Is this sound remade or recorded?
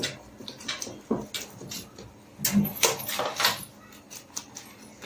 recorded